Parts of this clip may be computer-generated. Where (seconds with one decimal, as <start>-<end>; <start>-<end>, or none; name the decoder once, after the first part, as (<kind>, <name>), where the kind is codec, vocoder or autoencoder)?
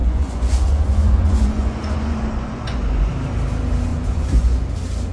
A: 0.0-3.1 (vocoder, Vocos); 3.9-4.6